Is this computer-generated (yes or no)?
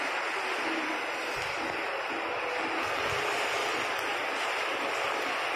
no